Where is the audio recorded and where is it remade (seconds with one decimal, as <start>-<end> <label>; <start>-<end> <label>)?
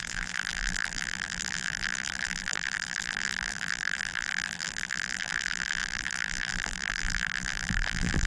0.0-8.3 remade